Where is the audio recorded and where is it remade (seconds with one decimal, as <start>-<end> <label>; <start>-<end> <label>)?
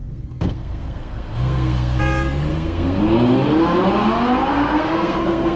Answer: 0.0-2.0 remade; 2.0-2.5 recorded; 2.5-3.0 remade; 3.0-4.5 recorded; 4.5-5.6 remade